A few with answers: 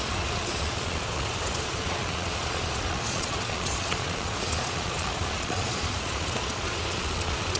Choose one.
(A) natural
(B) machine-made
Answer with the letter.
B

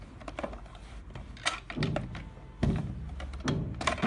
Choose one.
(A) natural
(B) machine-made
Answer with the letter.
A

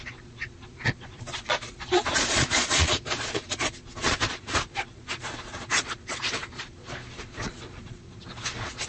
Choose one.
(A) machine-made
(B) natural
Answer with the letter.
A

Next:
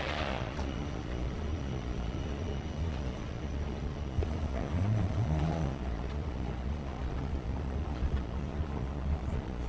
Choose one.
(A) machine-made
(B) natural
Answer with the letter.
A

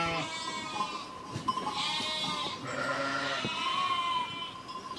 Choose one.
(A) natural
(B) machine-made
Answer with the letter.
A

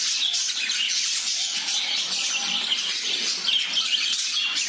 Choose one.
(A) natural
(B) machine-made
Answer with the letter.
A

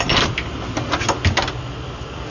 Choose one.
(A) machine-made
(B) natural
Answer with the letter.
B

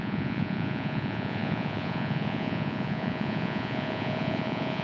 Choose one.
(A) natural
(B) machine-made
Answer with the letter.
B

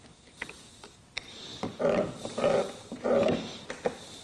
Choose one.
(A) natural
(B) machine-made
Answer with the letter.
A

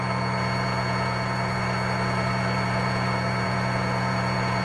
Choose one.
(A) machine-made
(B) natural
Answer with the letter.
A